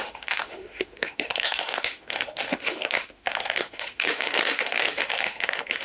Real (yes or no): no